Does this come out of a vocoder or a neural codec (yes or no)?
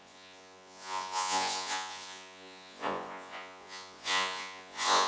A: yes